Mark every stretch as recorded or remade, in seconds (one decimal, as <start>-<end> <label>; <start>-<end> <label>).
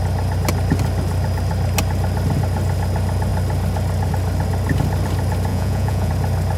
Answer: 0.0-5.5 recorded; 5.5-6.1 remade; 6.1-6.6 recorded